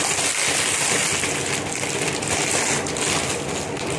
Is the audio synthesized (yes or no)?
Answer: no